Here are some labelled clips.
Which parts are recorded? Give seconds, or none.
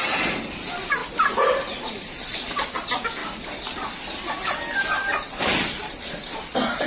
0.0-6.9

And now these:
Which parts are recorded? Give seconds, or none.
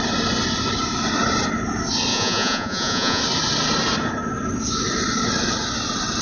0.0-2.1; 3.2-6.2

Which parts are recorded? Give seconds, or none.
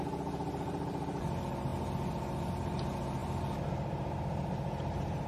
0.0-5.3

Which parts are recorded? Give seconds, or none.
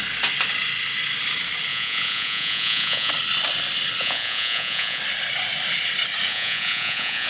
0.0-1.7; 3.1-4.0; 5.0-6.3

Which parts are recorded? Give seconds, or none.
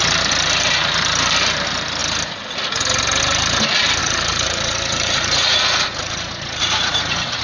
0.0-4.0